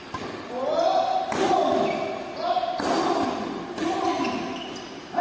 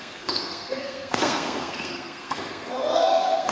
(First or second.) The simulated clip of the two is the second